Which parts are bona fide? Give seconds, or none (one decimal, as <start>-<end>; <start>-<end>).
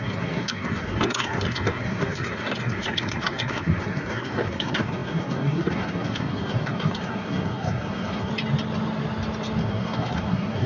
8.3-9.6